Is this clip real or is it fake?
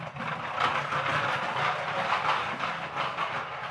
real